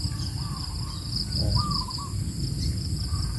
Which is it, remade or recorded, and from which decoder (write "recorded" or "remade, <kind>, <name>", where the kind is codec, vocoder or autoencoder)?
recorded